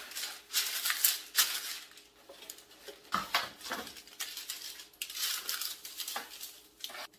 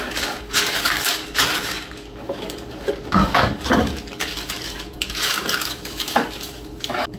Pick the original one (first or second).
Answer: first